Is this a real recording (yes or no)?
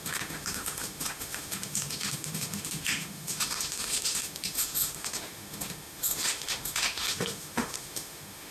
no